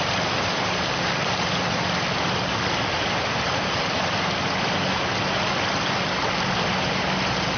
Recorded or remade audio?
recorded